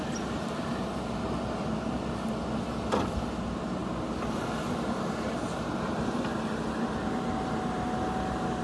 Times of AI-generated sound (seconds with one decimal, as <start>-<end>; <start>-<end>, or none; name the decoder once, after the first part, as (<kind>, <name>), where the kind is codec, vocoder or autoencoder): none